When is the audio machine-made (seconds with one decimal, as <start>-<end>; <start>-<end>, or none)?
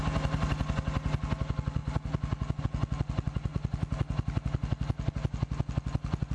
none